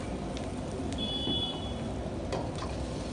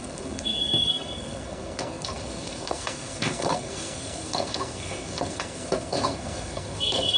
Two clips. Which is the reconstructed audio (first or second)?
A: second